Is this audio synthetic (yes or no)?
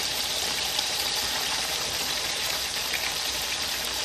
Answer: yes